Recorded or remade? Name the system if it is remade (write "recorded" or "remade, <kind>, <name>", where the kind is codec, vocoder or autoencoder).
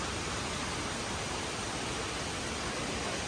recorded